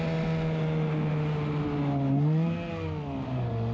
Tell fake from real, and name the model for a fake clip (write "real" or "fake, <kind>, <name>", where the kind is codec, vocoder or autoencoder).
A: real